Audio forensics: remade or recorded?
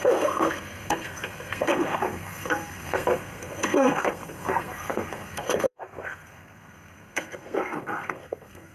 remade